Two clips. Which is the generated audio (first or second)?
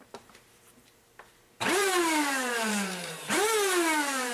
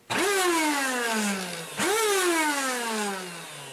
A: first